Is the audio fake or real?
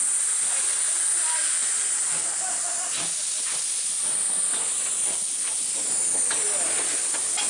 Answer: real